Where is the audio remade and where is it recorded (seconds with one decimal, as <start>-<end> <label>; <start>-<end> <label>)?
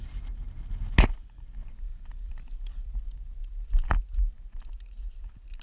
0.0-5.6 recorded